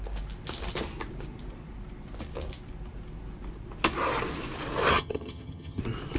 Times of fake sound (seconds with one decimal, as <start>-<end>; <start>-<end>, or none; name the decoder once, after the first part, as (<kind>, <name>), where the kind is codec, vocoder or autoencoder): 4.9-5.8 (vocoder, HiFi-GAN)